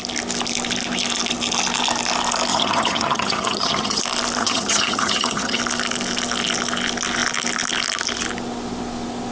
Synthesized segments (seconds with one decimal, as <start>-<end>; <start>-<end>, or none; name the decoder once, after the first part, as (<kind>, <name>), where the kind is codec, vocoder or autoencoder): 2.5-4.0 (vocoder, HiFi-GAN); 4.4-5.6

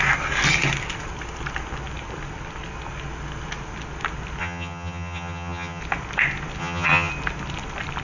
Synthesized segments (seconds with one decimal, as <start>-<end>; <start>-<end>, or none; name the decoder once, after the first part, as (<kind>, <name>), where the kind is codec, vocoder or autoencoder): 4.4-5.8 (vocoder, HiFi-GAN); 6.6-7.1

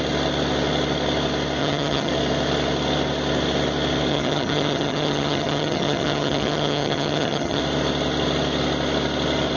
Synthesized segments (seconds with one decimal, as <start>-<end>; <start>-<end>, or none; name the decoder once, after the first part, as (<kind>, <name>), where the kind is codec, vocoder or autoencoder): 1.6-2.1 (vocoder, HiFi-GAN); 4.1-7.6

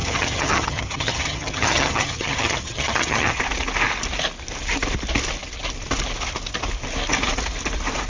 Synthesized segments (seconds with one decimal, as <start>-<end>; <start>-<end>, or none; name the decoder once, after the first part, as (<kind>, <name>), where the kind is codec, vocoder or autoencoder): 0.0-3.4 (vocoder, HiFi-GAN)

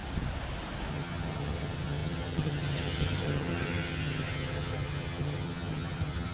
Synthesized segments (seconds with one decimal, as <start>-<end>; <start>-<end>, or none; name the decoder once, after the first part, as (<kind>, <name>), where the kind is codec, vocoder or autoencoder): 0.9-6.3 (vocoder, HiFi-GAN)

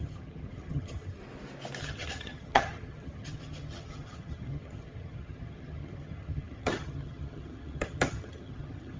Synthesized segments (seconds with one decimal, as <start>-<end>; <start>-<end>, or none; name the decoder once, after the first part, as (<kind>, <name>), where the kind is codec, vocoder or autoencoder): 0.0-1.2 (vocoder, HiFi-GAN); 1.8-9.0

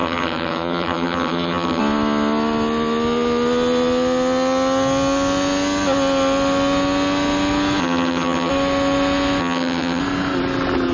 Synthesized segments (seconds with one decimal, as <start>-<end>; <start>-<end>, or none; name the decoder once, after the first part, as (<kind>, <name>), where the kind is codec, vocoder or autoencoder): 0.0-1.8 (vocoder, HiFi-GAN); 7.8-8.5; 9.4-10.0